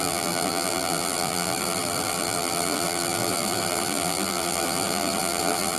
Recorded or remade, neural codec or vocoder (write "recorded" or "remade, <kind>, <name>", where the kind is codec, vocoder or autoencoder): remade, vocoder, BigVGAN v2